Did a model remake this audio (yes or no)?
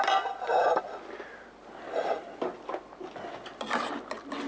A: no